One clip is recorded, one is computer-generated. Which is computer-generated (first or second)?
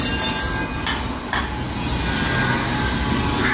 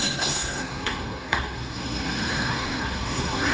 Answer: second